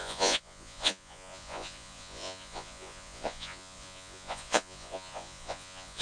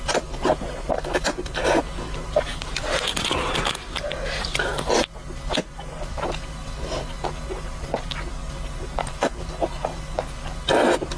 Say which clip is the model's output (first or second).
first